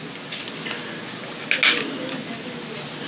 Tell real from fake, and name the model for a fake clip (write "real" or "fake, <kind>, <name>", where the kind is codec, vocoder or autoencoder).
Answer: real